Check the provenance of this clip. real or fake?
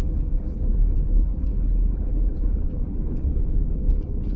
fake